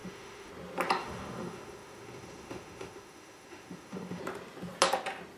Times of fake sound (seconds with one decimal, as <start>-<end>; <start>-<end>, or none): 0.0-0.5; 1.0-4.2

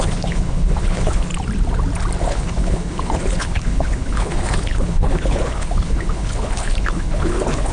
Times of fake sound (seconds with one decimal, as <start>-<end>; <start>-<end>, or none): 0.0-1.3; 2.2-7.7

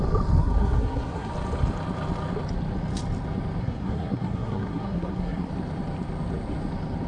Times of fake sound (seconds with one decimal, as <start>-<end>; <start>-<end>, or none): 0.4-1.3; 3.6-5.5